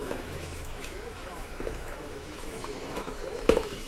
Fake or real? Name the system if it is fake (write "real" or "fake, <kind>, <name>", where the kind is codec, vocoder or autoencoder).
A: fake, autoencoder, DAC-VAE